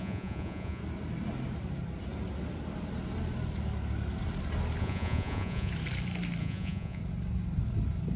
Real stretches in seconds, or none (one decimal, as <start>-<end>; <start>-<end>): 0.8-4.8; 5.7-6.4; 7.0-8.2